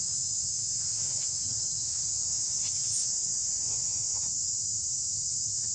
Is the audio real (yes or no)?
no